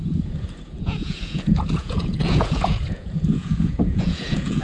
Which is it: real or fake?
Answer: fake